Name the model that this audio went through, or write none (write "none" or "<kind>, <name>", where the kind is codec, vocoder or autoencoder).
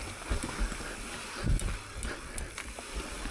none